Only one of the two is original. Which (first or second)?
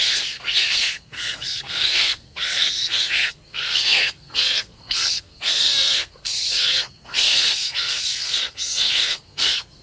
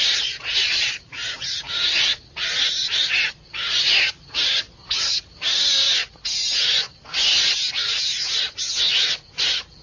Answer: second